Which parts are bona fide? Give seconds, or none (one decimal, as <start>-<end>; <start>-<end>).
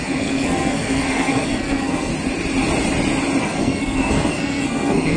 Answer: 2.1-3.4